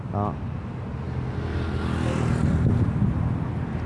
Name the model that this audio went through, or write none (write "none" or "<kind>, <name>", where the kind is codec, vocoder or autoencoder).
none